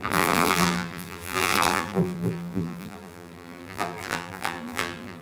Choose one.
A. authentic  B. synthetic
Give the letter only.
B